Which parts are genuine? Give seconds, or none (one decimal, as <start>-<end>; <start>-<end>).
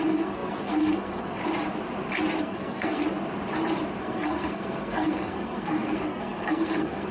1.4-2.4; 3.0-4.0